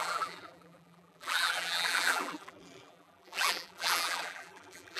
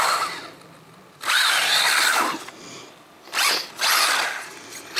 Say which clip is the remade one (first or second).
first